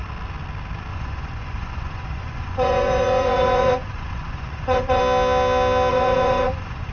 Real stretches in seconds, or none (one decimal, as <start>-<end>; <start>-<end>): 0.0-0.9; 5.0-5.9